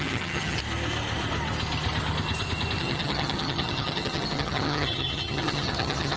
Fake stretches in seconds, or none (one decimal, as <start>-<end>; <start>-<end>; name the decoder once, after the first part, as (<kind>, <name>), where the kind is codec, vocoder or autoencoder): 0.0-0.6 (vocoder, HiFi-GAN); 2.8-6.2

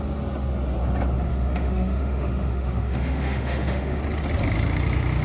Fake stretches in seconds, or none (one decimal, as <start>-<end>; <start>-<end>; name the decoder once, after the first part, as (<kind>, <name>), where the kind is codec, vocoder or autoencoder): 1.3-4.0 (autoencoder, DAC-VAE)

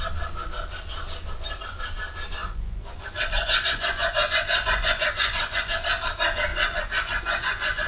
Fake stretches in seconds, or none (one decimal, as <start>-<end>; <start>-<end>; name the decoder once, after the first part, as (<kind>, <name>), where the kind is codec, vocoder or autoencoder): 2.4-5.7 (vocoder, Vocos); 6.5-7.9

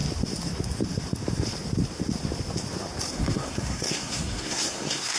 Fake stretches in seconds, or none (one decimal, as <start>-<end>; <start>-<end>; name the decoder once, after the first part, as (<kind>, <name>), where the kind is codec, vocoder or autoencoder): 3.1-5.2 (codec, SNAC)

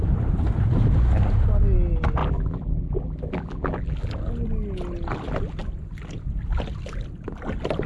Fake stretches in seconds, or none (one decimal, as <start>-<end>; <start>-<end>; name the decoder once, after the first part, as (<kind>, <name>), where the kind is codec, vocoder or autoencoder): 2.2-4.1 (vocoder, BigVGAN v2)

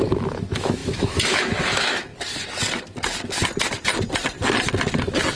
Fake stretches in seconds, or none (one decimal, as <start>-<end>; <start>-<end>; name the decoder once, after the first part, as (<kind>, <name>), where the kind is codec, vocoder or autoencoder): 0.0-2.1 (autoencoder, DAC-VAE)